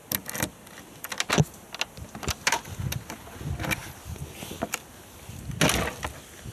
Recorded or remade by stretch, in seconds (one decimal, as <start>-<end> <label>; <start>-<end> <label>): 0.0-6.5 recorded